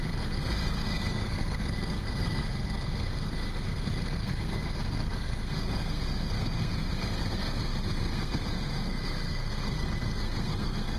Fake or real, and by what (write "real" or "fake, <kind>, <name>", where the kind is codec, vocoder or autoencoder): fake, codec, SNAC